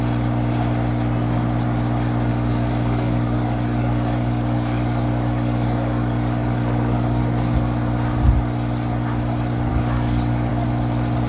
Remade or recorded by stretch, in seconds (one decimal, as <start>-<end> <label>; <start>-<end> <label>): 0.0-2.3 recorded; 2.3-7.2 remade; 7.2-9.7 recorded; 9.7-10.5 remade; 10.5-11.3 recorded